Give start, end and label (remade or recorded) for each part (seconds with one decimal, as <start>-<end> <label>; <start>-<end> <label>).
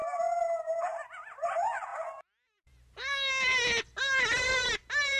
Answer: 0.0-1.9 recorded; 1.9-2.7 remade; 2.7-5.2 recorded